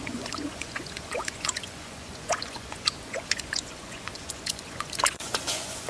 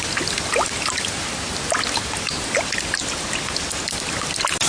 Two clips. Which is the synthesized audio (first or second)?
first